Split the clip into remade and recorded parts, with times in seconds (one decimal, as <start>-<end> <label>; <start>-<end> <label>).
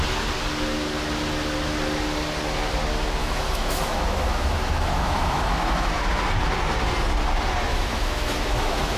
0.0-3.2 recorded; 3.2-5.9 remade; 5.9-7.7 recorded; 7.7-9.0 remade